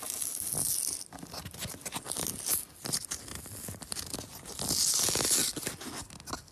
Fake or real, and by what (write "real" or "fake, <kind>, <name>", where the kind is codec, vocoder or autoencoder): real